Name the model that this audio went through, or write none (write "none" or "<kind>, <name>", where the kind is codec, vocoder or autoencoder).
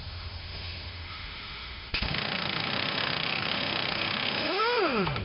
autoencoder, DAC-VAE